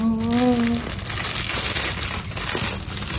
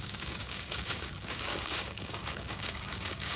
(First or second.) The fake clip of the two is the second